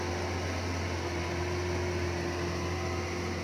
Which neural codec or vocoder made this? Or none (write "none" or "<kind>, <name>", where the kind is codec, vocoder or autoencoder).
none